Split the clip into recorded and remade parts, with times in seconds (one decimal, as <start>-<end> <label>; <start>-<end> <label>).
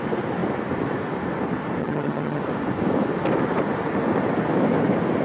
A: 0.0-1.8 recorded; 1.8-2.4 remade; 2.4-5.2 recorded